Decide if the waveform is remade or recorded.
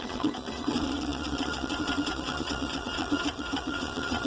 remade